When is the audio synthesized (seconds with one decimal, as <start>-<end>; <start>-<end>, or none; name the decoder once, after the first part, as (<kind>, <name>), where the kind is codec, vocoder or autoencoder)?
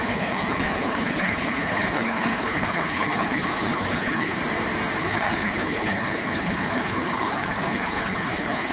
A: 0.0-4.4 (codec, HILCodec); 5.0-8.7